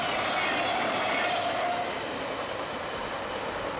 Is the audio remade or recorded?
recorded